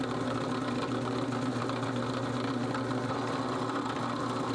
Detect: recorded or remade recorded